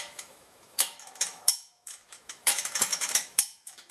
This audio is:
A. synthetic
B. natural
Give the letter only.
A